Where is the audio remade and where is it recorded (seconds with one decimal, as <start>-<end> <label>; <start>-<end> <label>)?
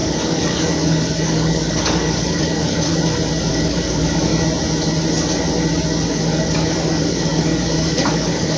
0.0-2.9 remade; 2.9-3.5 recorded; 3.5-4.3 remade; 4.3-6.1 recorded; 6.1-8.6 remade